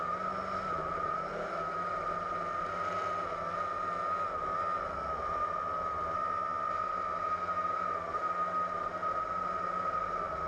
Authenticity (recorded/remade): recorded